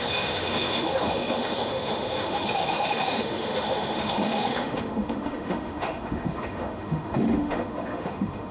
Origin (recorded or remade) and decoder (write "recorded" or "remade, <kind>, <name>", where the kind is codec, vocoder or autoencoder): remade, autoencoder, DAC-VAE